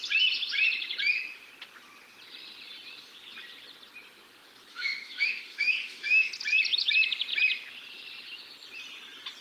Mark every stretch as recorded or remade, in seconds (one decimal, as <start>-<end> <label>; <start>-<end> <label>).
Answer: 0.0-4.7 recorded; 4.7-6.3 remade; 6.3-9.4 recorded